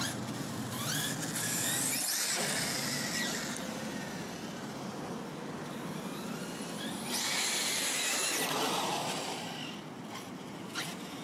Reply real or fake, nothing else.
real